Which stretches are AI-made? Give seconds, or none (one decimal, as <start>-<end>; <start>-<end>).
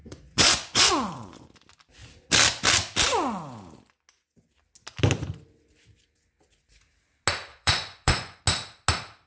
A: 0.0-1.5; 7.5-8.4